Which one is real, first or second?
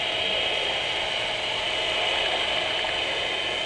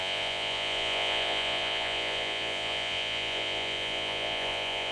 first